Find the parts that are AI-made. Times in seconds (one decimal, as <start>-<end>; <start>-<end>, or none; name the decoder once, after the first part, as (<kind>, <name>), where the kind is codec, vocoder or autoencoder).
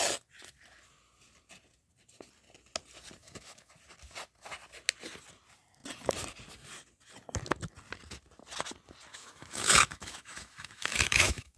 3.2-3.7 (autoencoder, DAC-VAE); 9.1-11.6